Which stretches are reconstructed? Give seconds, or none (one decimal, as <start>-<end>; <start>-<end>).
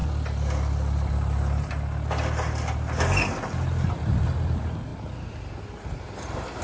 none